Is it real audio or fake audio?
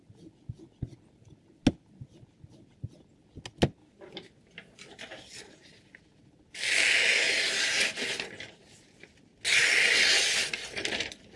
real